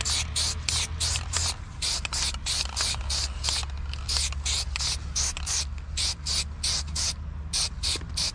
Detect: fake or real real